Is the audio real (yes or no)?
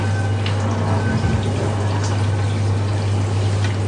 yes